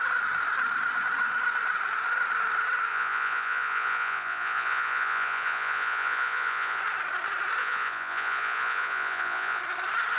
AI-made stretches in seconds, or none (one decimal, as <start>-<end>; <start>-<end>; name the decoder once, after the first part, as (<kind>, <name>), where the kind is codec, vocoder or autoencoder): 2.9-6.8 (vocoder, Vocos); 7.6-9.6